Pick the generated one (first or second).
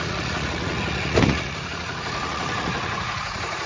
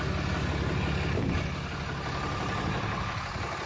first